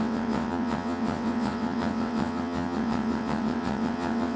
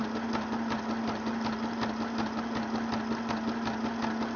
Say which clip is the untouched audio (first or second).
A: second